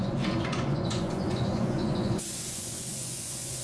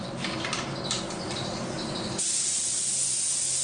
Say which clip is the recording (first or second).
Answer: second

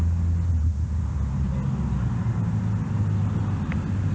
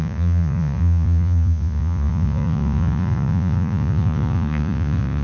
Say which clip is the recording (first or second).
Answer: first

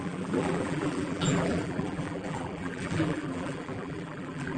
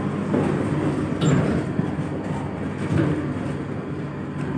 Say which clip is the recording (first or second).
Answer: second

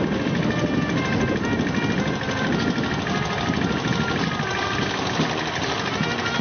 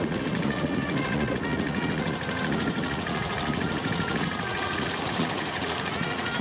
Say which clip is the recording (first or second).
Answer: first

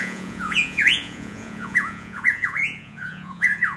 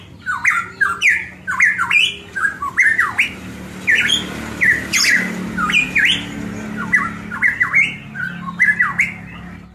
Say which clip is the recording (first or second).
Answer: second